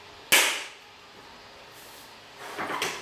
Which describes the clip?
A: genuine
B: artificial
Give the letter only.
A